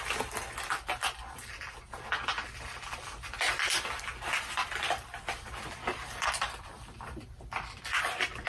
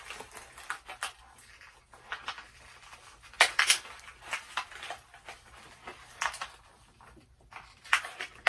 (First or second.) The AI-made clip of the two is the first